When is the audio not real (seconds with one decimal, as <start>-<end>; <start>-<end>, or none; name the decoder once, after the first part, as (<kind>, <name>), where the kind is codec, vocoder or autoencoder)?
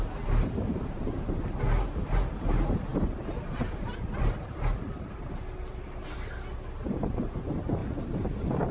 none